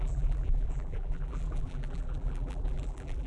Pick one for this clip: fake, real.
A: fake